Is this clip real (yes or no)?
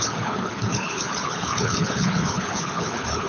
no